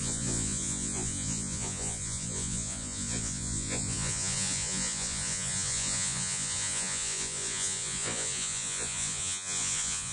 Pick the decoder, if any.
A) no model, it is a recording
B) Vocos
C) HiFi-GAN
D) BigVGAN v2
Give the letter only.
B